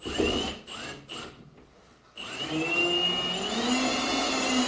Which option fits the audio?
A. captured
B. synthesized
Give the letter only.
A